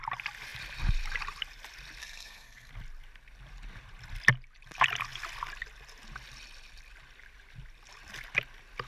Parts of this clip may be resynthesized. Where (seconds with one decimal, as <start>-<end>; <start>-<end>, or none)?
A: 2.0-2.7